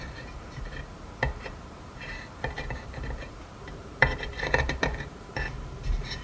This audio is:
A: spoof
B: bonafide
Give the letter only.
A